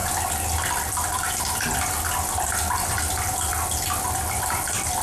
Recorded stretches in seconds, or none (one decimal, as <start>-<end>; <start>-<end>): 0.0-3.0; 3.5-5.0

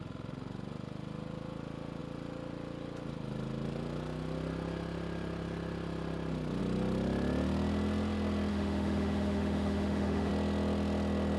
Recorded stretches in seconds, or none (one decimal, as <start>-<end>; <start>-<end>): 0.0-8.5; 10.3-11.4

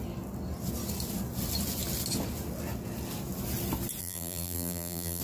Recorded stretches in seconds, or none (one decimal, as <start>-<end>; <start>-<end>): 0.0-4.0